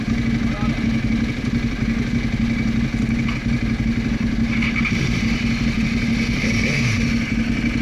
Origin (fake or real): real